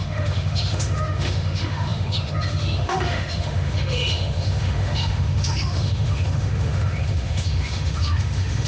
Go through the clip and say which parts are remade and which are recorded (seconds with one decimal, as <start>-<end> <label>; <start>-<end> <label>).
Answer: 0.0-8.7 remade

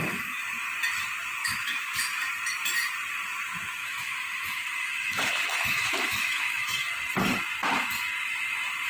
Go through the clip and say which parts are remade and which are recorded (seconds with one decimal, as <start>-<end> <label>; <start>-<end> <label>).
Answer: 0.0-1.4 recorded; 1.4-2.3 remade; 2.3-3.8 recorded; 3.8-6.7 remade; 6.7-8.9 recorded

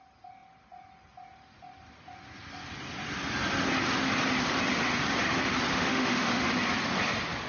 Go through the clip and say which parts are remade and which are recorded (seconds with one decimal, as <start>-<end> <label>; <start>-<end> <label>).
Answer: 0.0-5.7 recorded; 5.7-6.5 remade; 6.5-7.5 recorded

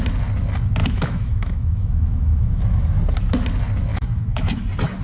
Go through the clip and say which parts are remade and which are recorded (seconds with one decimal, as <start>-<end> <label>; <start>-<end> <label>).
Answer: 0.0-0.8 recorded; 0.8-2.6 remade; 2.6-3.9 recorded; 3.9-4.6 remade; 4.6-5.0 recorded

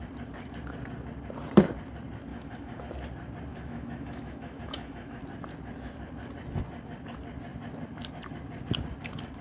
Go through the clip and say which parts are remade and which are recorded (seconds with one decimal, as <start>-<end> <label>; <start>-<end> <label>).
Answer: 0.0-2.3 recorded; 2.3-2.8 remade; 2.8-3.5 recorded; 3.5-5.2 remade; 5.2-9.4 recorded

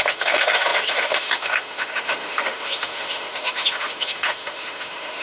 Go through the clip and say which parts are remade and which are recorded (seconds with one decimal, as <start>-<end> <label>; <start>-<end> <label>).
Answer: 0.0-5.2 remade